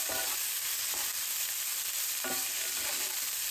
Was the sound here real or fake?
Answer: real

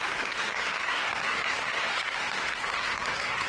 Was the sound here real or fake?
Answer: fake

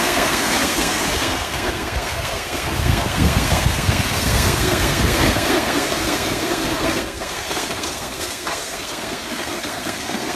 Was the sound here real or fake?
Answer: fake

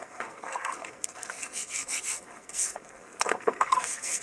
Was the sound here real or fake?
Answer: fake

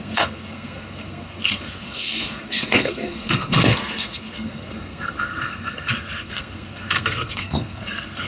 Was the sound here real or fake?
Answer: fake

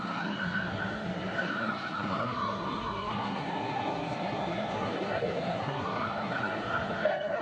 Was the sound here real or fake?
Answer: fake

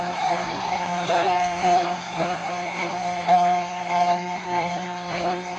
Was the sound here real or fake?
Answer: fake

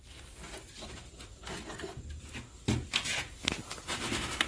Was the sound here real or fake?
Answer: real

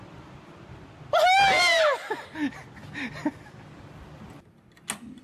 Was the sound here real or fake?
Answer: real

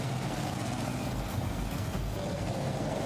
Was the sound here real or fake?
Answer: fake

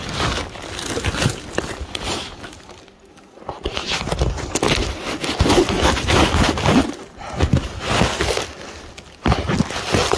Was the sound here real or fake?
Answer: real